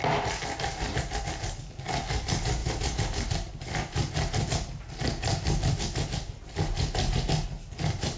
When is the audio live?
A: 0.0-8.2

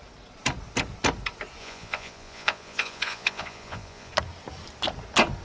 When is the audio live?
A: 0.0-1.6; 4.1-5.4